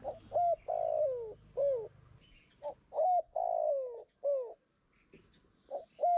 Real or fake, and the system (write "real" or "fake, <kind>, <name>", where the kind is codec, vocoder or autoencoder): real